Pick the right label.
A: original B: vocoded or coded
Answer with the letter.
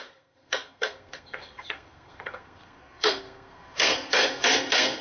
B